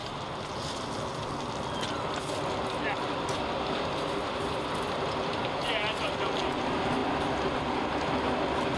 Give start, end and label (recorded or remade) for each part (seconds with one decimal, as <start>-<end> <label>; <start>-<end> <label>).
0.0-8.8 recorded